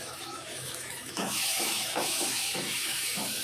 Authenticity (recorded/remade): remade